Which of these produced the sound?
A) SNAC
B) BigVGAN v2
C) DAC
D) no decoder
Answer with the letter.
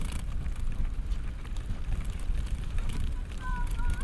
B